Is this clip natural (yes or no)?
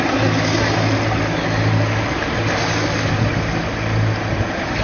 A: yes